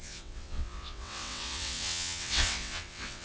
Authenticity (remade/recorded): remade